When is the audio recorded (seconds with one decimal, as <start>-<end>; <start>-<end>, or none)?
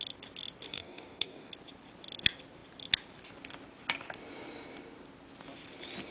0.0-0.7; 1.5-6.1